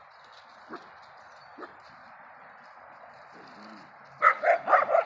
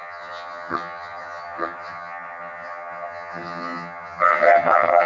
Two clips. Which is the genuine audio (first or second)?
first